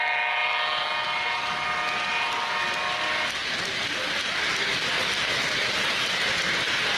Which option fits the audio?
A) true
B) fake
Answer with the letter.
A